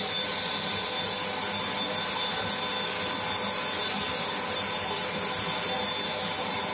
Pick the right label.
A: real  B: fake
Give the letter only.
A